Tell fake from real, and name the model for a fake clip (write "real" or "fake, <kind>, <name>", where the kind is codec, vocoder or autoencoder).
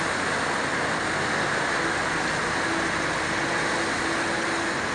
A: real